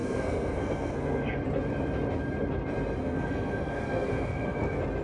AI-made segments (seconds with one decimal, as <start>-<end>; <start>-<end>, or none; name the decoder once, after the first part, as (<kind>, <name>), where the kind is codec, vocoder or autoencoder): 0.0-1.3 (codec, SNAC); 3.0-4.6